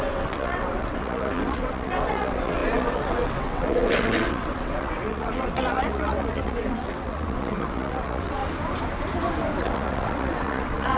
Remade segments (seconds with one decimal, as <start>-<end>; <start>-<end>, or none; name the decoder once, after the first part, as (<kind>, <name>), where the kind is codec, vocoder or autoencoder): 0.0-8.4 (vocoder, WaveNeXt); 9.6-11.0